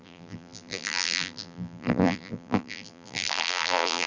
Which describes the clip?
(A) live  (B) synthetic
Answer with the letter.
B